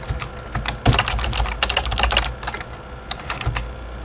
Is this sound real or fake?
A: real